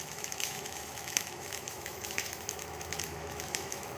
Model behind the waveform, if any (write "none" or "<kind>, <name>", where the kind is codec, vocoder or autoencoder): autoencoder, DAC-VAE